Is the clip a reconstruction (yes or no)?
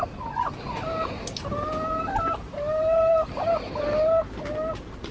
no